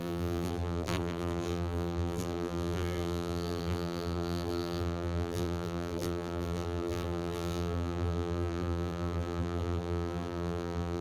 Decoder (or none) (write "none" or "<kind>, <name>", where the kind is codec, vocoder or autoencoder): vocoder, BigVGAN v2